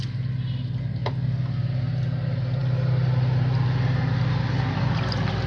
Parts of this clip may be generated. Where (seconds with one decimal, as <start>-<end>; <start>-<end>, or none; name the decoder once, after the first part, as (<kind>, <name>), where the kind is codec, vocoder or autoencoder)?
1.0-1.8 (vocoder, BigVGAN v2)